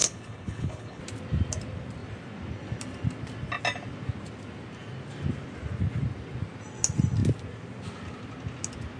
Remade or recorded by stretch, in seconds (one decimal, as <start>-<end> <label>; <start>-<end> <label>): 0.0-1.0 remade; 1.0-9.0 recorded